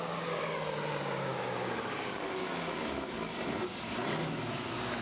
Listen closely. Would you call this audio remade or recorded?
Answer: remade